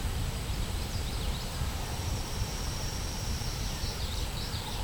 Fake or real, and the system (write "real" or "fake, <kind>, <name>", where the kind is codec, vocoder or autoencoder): fake, vocoder, BigVGAN v2